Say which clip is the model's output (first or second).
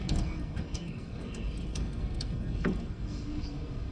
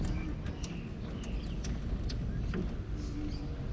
first